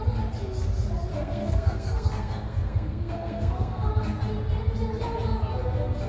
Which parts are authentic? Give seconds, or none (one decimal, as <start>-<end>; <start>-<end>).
0.0-1.1; 3.9-6.1